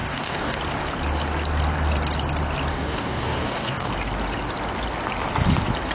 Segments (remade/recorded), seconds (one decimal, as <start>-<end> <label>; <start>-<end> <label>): 0.0-0.6 remade; 0.6-2.7 recorded; 2.7-3.9 remade; 3.9-5.9 recorded